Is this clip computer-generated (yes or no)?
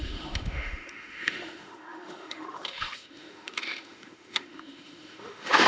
yes